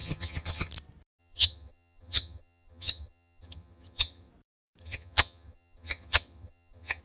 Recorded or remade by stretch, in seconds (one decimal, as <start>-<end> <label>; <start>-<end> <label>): 0.0-0.7 remade; 0.7-1.2 recorded; 1.2-4.3 remade; 4.3-4.8 recorded; 4.8-7.0 remade